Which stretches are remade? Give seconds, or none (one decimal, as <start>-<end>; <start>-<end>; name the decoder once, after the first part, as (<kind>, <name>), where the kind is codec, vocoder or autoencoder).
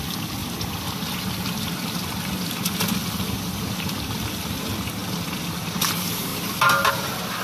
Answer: none